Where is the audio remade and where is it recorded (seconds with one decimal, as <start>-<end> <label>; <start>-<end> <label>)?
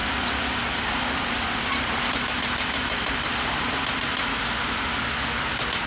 0.0-3.3 remade; 3.3-5.9 recorded